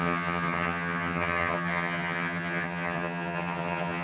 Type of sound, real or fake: fake